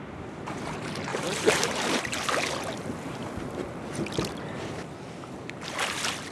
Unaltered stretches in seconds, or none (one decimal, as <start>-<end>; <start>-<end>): 0.0-1.1; 2.0-3.2; 3.8-6.3